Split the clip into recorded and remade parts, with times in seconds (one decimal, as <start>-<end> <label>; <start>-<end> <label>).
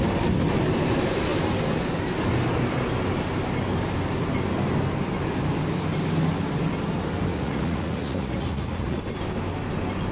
0.0-7.3 recorded; 7.3-9.0 remade; 9.0-10.1 recorded